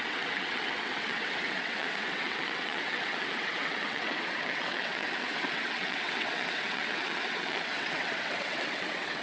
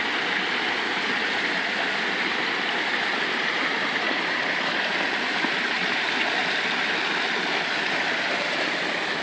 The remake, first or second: first